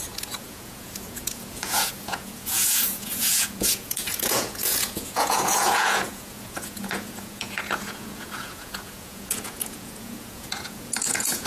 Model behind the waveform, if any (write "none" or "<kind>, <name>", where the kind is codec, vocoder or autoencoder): vocoder, Vocos